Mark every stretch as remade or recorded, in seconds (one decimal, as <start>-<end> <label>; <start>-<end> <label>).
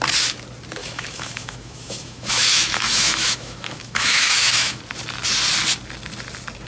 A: 0.0-0.8 recorded; 0.8-4.8 remade; 4.8-6.7 recorded